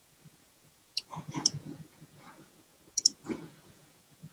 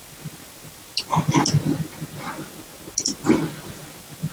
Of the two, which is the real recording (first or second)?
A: second